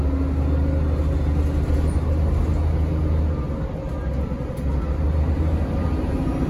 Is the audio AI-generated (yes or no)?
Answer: no